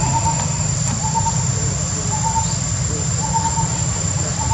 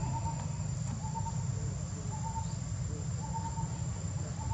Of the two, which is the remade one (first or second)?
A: first